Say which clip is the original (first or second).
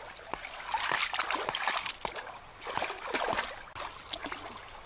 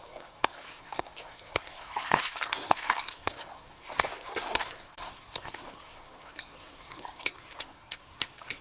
first